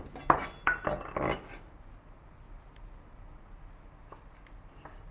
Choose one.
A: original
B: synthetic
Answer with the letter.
A